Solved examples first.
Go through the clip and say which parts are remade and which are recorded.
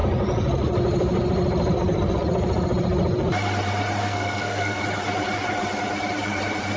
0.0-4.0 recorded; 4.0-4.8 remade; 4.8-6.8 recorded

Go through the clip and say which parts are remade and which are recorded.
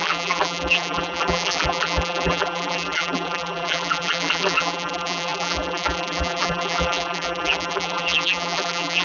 0.0-9.0 remade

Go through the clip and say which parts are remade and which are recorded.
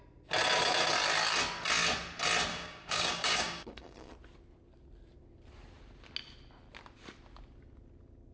0.0-2.5 recorded; 2.5-4.1 remade; 4.1-8.3 recorded